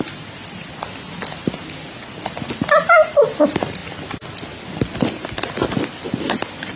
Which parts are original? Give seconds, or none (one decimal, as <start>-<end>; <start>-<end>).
0.0-6.8